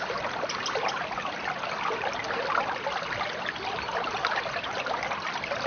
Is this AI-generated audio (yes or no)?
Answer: no